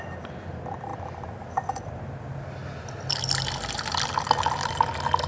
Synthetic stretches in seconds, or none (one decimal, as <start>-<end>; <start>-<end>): none